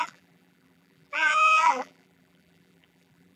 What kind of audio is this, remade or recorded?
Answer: remade